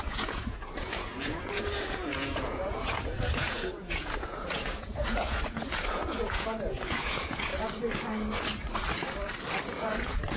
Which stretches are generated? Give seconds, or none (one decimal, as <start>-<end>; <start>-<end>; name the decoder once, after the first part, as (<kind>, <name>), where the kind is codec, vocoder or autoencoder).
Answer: 0.0-7.5 (vocoder, Vocos); 9.7-10.4